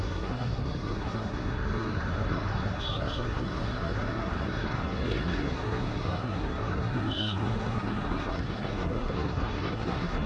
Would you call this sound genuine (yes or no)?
no